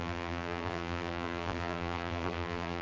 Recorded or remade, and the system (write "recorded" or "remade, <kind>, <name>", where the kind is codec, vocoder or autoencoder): remade, vocoder, BigVGAN v2